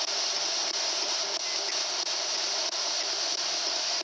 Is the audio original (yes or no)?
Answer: yes